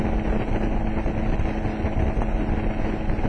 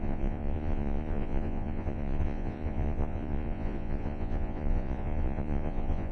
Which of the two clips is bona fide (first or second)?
first